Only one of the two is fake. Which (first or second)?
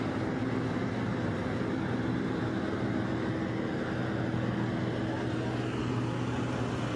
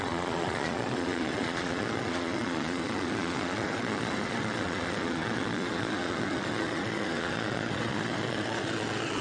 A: second